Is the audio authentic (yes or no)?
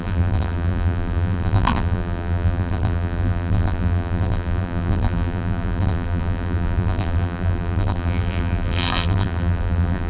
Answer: no